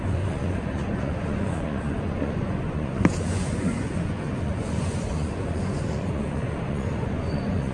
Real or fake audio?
fake